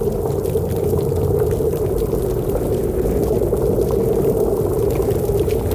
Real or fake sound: real